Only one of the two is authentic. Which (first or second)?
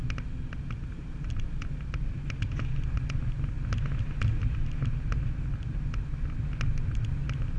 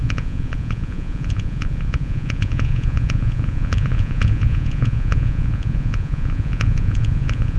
first